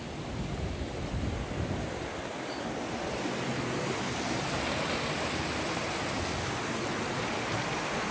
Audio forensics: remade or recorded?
recorded